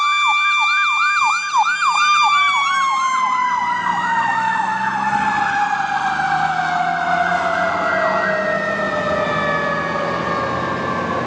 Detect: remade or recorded recorded